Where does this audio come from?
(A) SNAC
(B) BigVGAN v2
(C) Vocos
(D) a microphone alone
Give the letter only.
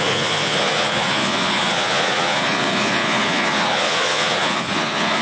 C